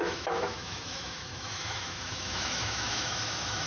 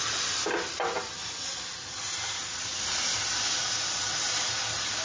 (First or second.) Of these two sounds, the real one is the second